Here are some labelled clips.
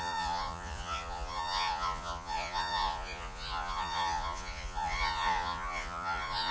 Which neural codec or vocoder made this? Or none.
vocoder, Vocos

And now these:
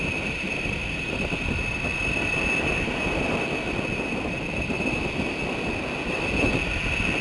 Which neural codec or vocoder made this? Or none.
none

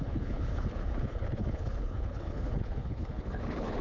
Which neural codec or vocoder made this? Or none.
codec, HILCodec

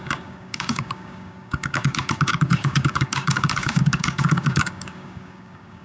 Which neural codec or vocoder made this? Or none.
codec, DAC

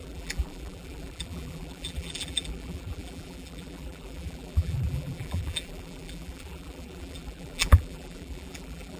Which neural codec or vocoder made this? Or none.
vocoder, BigVGAN v2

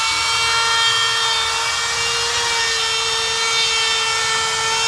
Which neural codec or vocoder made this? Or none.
none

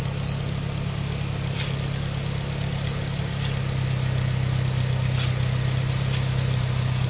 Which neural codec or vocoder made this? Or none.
none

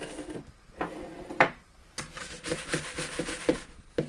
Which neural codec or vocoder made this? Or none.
none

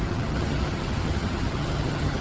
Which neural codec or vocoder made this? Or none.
vocoder, HiFi-GAN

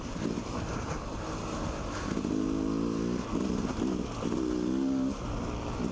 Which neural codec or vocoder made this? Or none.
none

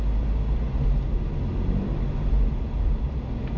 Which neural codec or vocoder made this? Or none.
none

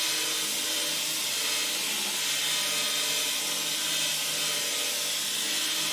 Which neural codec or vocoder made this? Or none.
none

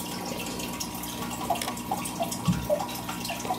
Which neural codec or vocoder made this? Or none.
none